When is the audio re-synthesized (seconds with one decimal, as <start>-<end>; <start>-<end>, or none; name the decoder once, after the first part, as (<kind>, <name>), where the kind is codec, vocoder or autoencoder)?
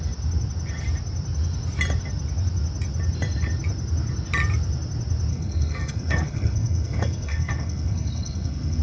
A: 5.3-8.8 (codec, SNAC)